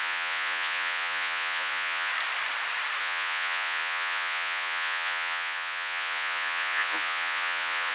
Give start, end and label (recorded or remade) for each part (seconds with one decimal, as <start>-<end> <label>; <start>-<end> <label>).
0.0-2.1 remade; 2.1-3.0 recorded; 3.0-7.9 remade